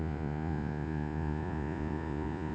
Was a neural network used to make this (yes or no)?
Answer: yes